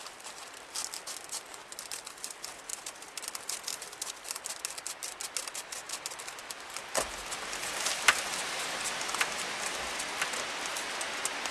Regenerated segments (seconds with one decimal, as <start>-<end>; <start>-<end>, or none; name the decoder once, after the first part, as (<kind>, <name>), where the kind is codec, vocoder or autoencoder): none